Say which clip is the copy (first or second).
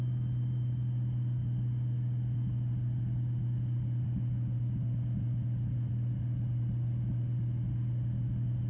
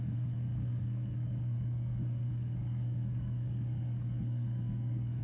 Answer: second